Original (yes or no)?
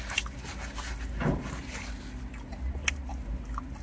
yes